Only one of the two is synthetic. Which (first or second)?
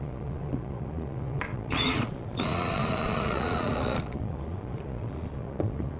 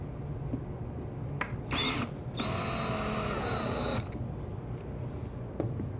first